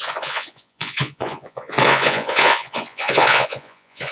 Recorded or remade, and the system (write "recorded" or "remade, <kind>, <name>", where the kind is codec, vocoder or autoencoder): remade, vocoder, Vocos